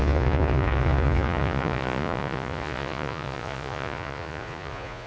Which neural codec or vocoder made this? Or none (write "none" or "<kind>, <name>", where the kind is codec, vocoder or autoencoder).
vocoder, Vocos